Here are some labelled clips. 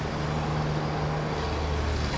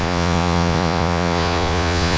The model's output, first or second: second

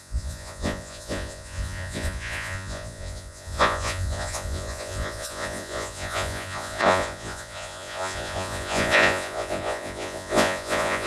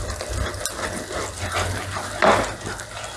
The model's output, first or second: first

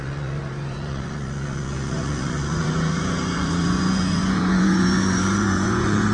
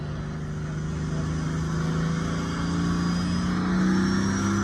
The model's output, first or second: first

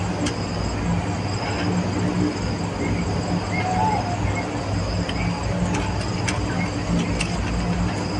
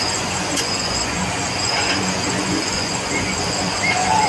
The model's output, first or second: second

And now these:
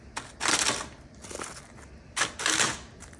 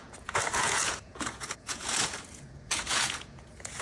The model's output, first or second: second